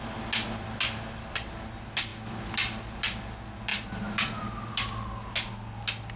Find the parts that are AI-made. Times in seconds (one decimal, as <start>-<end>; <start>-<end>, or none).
none